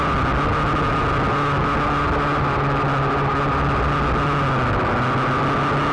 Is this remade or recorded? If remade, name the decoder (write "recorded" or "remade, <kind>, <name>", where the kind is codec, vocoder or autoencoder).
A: recorded